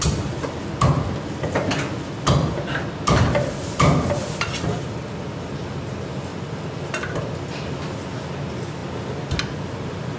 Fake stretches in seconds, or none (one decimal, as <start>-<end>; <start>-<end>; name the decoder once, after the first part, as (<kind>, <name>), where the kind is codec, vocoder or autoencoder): none

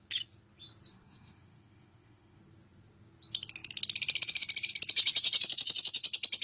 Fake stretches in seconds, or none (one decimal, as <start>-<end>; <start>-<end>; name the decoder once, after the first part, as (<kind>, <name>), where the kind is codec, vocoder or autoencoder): 0.9-2.4 (autoencoder, DAC-VAE)

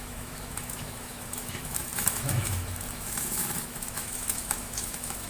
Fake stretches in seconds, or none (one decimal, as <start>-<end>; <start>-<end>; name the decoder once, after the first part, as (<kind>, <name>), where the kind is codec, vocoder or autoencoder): 0.0-5.3 (autoencoder, DAC-VAE)

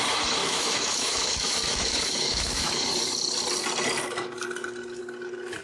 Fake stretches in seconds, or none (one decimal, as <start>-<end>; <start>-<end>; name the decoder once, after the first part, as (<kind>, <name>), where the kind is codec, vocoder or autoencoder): 0.4-2.8 (autoencoder, DAC-VAE)

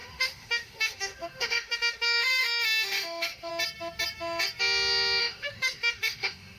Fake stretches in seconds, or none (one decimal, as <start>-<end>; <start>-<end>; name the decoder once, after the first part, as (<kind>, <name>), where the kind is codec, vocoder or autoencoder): 0.0-3.5 (autoencoder, DAC-VAE); 5.2-6.6

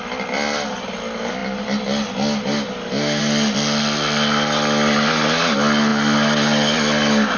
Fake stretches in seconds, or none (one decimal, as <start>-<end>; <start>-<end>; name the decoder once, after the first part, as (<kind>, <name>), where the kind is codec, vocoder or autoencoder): none

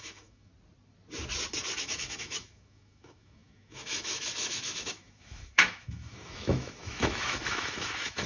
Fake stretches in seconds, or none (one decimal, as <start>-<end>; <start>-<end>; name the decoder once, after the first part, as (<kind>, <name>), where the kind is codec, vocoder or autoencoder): 0.0-0.5 (autoencoder, DAC-VAE); 1.8-8.3